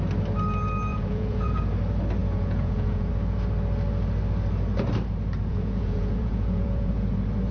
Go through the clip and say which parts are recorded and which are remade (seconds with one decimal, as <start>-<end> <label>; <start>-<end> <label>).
0.0-0.9 recorded; 0.9-1.6 remade; 1.6-2.2 recorded; 2.2-3.1 remade; 3.1-5.5 recorded; 5.5-6.9 remade; 6.9-7.5 recorded